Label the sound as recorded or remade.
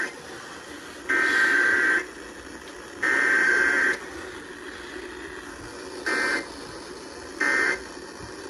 recorded